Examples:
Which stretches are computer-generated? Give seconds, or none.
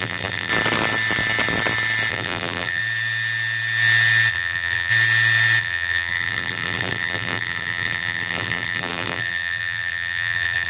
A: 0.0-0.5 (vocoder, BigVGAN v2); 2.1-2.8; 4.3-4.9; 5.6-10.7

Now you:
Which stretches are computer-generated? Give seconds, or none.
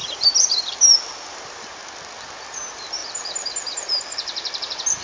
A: 0.0-1.7 (vocoder, BigVGAN v2)